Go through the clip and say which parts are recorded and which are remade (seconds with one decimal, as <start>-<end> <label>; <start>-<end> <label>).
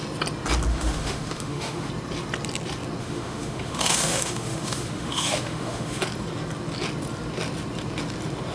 0.0-0.7 recorded; 0.7-1.9 remade; 1.9-3.0 recorded; 3.0-6.0 remade; 6.0-8.5 recorded